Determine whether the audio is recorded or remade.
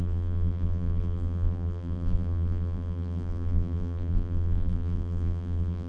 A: remade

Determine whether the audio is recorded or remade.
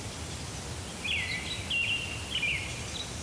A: recorded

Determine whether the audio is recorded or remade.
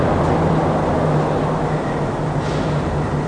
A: recorded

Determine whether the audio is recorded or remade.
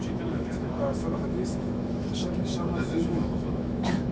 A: remade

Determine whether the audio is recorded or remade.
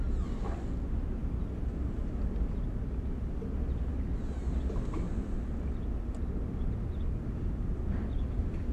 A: recorded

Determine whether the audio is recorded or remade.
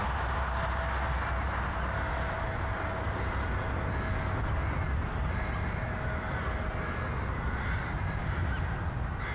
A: recorded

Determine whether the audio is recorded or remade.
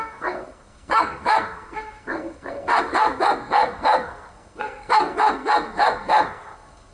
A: remade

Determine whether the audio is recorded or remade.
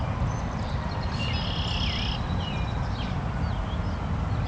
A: recorded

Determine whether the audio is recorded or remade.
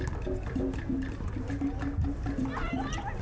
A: recorded